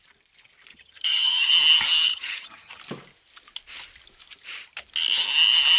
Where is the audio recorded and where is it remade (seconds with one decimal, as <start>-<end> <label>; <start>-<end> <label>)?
0.0-0.7 recorded; 0.7-1.5 remade; 1.5-2.1 recorded; 2.1-2.8 remade; 2.8-5.8 recorded